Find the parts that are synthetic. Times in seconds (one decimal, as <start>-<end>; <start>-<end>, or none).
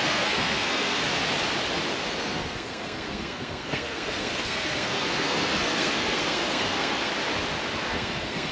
0.0-1.0; 2.1-7.1; 7.8-8.5